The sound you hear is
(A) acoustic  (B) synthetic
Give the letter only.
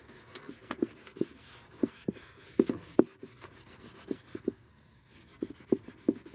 B